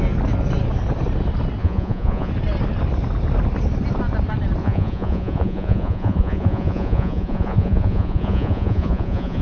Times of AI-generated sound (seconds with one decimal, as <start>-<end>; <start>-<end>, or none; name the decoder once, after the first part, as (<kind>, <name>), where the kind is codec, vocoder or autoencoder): 1.6-2.3 (vocoder, Vocos); 4.6-9.4